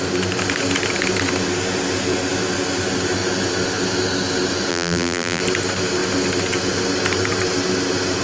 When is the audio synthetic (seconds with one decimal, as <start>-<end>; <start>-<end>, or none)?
4.7-5.4